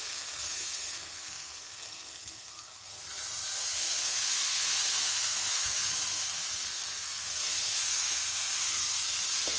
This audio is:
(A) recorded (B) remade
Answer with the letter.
B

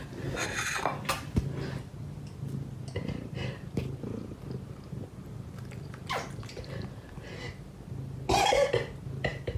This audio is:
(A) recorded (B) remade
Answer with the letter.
A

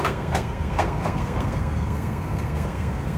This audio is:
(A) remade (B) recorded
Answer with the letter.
A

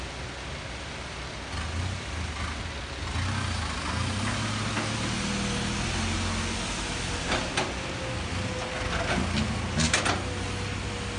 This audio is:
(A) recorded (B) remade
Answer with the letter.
A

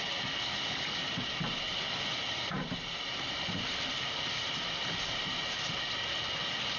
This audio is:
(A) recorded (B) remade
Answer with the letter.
A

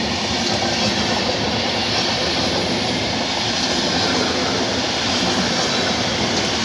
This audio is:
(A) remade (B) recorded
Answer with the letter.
B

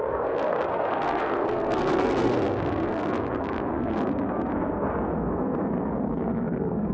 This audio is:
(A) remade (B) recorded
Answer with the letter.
A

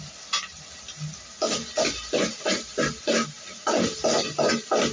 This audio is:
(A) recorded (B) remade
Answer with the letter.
A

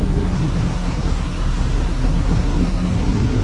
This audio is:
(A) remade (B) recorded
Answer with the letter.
A